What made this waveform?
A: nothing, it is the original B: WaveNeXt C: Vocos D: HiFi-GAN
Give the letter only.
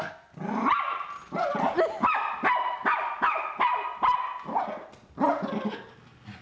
A